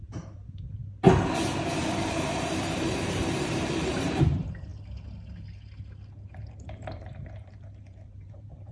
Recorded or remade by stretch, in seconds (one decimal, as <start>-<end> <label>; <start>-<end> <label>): 0.0-0.8 remade; 0.8-1.9 recorded; 1.9-4.7 remade; 4.7-6.3 recorded; 6.3-8.7 remade